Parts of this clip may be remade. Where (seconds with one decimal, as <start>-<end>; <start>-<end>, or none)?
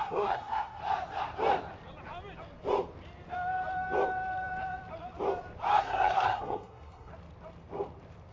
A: 0.0-0.8; 5.8-7.1